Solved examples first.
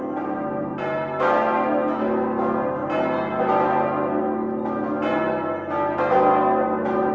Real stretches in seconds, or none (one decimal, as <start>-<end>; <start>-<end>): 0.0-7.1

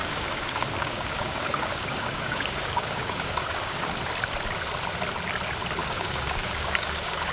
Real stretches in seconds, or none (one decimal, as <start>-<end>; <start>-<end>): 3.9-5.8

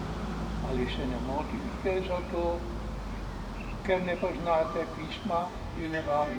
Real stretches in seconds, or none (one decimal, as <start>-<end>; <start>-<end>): 0.0-5.4

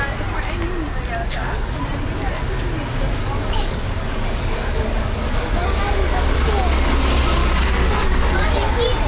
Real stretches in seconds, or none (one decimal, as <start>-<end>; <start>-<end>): 0.0-1.2; 1.8-3.2; 5.8-7.4; 8.5-9.1

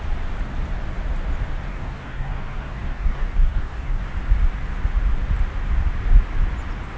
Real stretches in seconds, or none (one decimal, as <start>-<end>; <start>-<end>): 0.0-1.7; 4.0-7.0

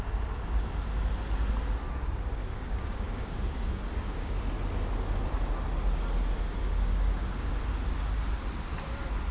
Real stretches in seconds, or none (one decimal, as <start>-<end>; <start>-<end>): 0.0-2.4; 4.4-6.6; 7.5-9.3

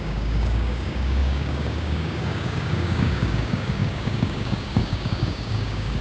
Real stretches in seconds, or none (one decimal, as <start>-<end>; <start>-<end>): none

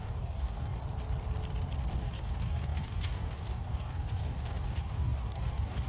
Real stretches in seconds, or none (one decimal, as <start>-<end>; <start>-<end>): 0.8-1.9